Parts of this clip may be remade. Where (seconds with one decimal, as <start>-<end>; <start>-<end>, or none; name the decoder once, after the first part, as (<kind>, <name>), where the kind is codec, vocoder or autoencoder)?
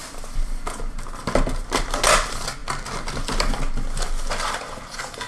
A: none